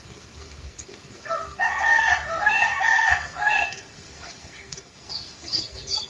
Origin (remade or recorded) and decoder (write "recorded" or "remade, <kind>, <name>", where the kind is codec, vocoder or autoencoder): remade, codec, SNAC